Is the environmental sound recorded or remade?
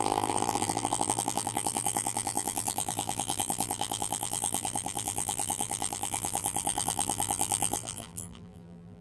remade